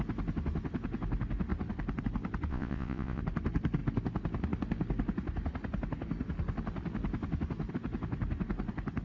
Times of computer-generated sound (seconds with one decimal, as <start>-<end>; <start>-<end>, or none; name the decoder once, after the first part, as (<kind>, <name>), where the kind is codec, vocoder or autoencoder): 2.5-3.2 (vocoder, Vocos)

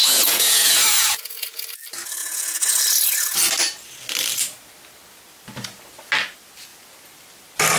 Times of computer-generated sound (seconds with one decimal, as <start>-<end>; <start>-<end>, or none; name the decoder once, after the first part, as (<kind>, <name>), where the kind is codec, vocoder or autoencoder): 0.0-1.6 (vocoder, Vocos); 2.2-2.8

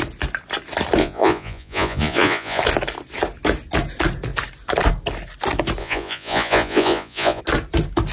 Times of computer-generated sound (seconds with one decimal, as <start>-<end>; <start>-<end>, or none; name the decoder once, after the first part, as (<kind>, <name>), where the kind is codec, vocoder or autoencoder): 1.0-2.6 (vocoder, Vocos); 5.8-7.4

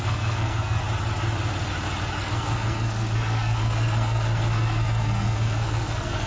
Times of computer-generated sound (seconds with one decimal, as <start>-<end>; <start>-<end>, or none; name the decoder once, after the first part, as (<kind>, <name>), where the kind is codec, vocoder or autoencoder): 0.0-0.8 (codec, SNAC); 2.2-6.3